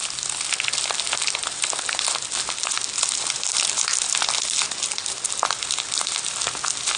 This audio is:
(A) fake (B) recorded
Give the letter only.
B